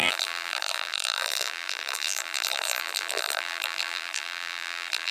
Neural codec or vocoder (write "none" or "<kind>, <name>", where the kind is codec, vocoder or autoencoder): vocoder, BigVGAN v2